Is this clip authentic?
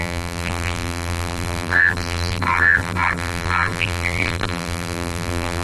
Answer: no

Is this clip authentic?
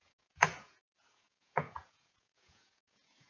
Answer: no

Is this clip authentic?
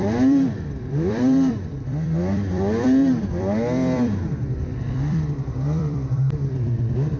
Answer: no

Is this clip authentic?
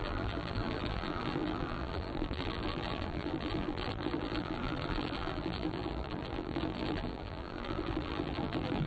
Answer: no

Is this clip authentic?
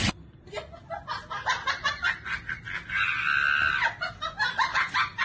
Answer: yes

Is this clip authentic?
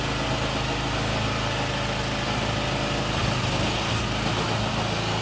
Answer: yes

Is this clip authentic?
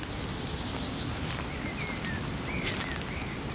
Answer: yes